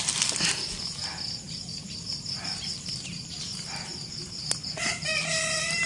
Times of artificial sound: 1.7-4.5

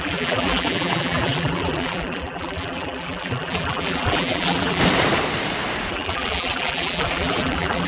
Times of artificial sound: 0.0-4.8; 5.9-7.9

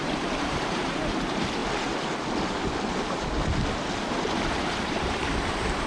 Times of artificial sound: 0.0-1.6; 4.6-5.9

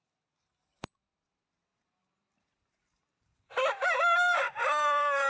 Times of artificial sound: 1.7-5.3

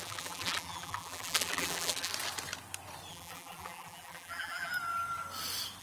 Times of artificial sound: 0.0-2.1; 3.1-4.7